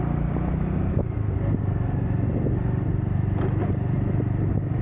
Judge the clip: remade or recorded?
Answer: recorded